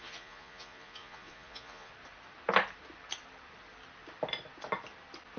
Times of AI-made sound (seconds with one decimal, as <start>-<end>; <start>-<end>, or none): 0.0-1.9